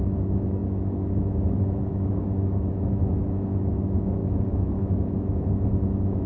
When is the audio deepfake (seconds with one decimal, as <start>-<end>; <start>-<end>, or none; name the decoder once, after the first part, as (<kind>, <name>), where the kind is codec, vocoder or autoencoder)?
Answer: 0.0-6.3 (autoencoder, DAC-VAE)